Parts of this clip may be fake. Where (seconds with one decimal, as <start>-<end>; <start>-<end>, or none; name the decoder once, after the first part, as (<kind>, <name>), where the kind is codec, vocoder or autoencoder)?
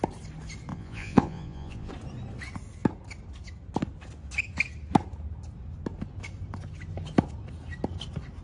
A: 0.7-1.9 (vocoder, Vocos)